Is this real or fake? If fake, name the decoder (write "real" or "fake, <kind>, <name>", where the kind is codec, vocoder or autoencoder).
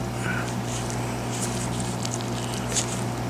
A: real